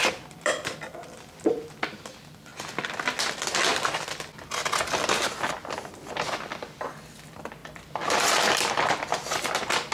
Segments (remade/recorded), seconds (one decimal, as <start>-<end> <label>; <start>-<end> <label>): 0.0-1.0 remade; 1.0-7.6 recorded; 7.6-8.7 remade; 8.7-9.9 recorded

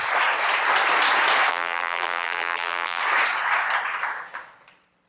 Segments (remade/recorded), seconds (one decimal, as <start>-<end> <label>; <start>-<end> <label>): 0.0-1.5 recorded; 1.5-3.0 remade; 3.0-5.1 recorded

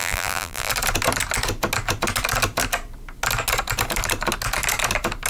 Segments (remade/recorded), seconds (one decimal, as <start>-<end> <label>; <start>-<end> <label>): 0.0-0.7 remade; 0.7-5.3 recorded